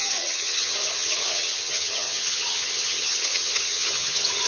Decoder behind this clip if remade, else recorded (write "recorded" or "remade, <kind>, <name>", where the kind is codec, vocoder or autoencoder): remade, vocoder, HiFi-GAN